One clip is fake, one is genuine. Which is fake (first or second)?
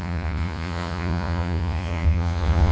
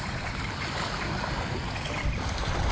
first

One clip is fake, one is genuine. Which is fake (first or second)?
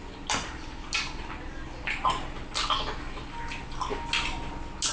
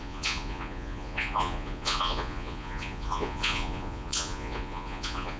second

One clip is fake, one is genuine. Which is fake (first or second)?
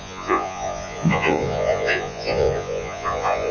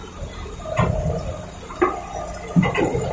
first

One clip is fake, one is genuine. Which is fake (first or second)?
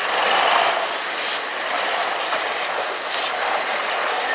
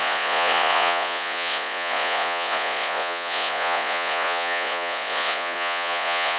second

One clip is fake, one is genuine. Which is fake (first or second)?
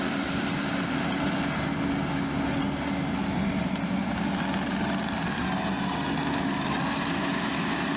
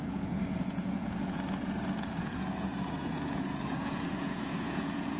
second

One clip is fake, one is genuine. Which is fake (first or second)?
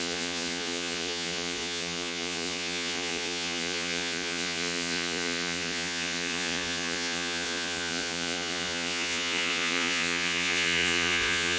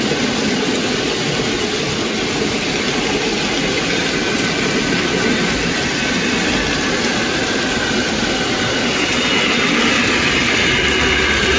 first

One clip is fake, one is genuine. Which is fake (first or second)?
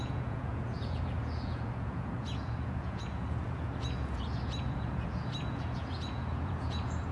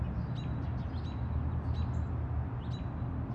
first